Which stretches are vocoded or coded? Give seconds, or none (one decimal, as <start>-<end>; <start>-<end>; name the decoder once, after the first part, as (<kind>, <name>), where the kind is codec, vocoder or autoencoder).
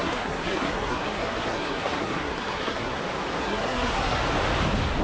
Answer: 0.0-3.0 (codec, SNAC); 3.4-4.2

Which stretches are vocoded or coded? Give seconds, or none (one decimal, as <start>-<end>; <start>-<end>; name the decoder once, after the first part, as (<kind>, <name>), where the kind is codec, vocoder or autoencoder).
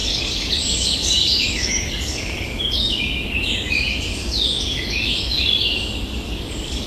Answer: 0.0-6.9 (codec, DAC)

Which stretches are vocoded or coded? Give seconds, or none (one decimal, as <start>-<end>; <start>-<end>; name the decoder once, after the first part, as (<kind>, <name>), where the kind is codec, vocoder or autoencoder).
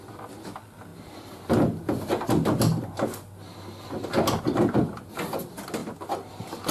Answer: none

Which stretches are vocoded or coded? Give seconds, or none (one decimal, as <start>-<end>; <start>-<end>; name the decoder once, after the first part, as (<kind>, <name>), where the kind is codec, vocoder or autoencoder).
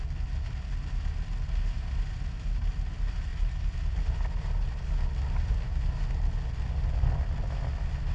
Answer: 3.3-4.0 (vocoder, BigVGAN v2)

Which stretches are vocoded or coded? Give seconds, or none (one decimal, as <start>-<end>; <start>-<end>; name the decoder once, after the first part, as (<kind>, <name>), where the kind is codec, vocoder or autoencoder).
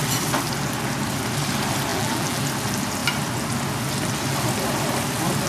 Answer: 1.9-2.4 (vocoder, BigVGAN v2)